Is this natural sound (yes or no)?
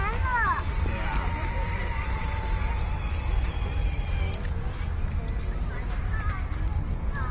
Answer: yes